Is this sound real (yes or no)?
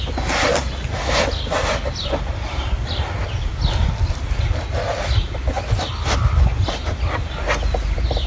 yes